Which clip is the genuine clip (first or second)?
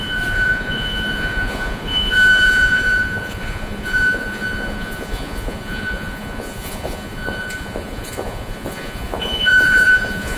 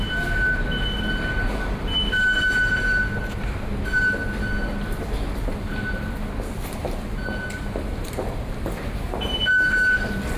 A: second